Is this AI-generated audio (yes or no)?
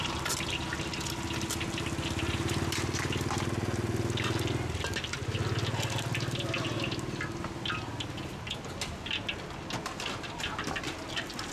no